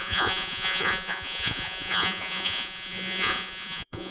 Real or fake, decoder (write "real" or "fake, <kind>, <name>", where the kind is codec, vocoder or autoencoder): fake, vocoder, Vocos